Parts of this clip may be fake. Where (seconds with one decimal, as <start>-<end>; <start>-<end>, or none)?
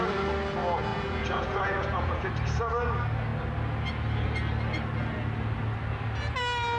0.9-2.3